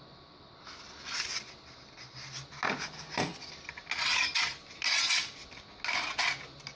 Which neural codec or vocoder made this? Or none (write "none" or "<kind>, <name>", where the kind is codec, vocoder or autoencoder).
none